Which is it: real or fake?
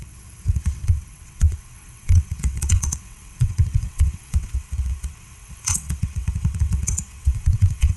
fake